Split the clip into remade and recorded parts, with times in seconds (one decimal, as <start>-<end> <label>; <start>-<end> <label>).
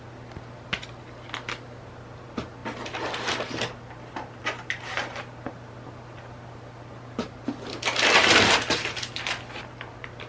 0.0-10.3 recorded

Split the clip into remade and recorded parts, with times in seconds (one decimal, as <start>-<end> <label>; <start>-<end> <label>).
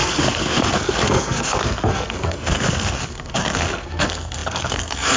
0.0-5.2 remade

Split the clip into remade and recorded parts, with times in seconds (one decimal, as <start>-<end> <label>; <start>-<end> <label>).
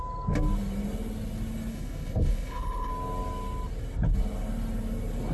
0.0-1.7 recorded; 1.7-2.9 remade; 2.9-5.3 recorded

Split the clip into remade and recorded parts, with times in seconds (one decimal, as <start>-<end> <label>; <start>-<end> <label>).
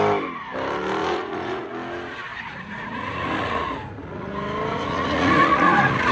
0.0-1.0 recorded; 1.0-1.7 remade; 1.7-2.3 recorded; 2.3-4.3 remade; 4.3-4.7 recorded; 4.7-6.1 remade